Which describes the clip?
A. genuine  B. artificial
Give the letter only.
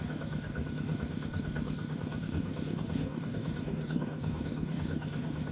B